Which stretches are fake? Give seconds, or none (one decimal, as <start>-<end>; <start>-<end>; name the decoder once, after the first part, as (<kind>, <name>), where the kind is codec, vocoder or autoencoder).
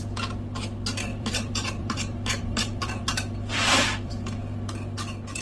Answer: 1.1-4.1 (vocoder, BigVGAN v2)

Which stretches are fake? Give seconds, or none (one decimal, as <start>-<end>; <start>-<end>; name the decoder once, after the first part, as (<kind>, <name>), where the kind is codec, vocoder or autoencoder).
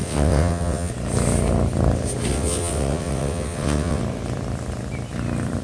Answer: 0.0-0.9 (vocoder, WaveNeXt); 2.3-4.0